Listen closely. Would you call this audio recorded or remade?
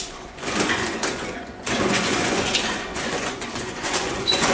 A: remade